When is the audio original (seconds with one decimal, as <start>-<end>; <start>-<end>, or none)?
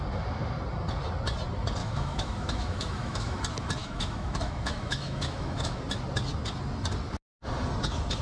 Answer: 0.0-1.8; 3.4-3.8; 5.8-8.2